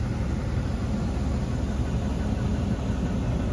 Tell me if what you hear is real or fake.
real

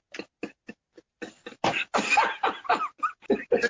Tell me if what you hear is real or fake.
real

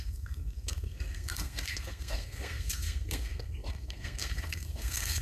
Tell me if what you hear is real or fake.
fake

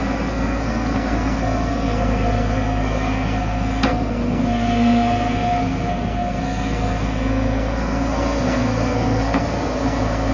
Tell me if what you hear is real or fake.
fake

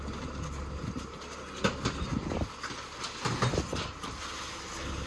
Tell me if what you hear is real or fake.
real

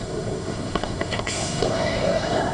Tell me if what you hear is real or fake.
fake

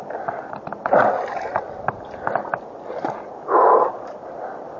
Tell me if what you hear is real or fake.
real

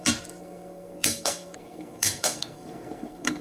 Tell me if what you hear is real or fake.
fake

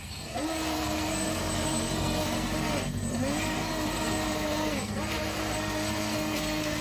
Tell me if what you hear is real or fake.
fake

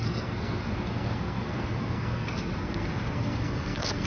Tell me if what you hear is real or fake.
fake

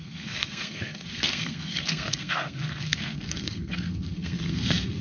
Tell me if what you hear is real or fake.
fake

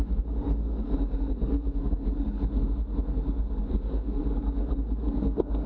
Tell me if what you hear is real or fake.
fake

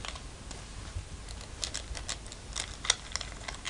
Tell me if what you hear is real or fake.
real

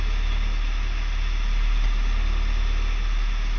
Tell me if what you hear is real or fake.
real